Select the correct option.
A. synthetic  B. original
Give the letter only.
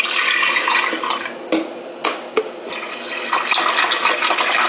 B